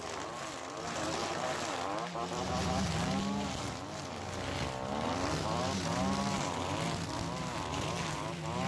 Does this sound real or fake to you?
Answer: real